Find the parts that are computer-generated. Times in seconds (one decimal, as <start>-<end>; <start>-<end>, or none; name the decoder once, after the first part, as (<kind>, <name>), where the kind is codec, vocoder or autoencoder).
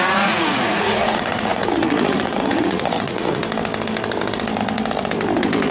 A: 0.0-3.4 (vocoder, Vocos)